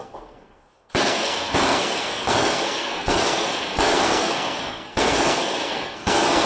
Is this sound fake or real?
fake